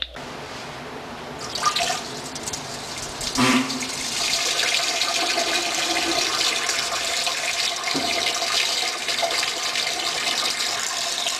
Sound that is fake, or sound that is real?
fake